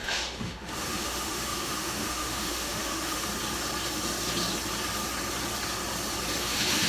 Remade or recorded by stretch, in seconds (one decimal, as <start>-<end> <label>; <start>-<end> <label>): 0.0-3.3 remade; 3.3-6.4 recorded; 6.4-6.9 remade